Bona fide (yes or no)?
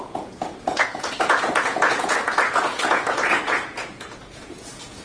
no